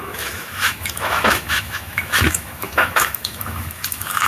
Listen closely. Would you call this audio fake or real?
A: fake